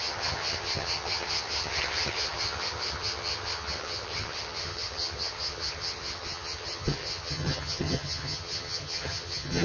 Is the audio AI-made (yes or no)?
yes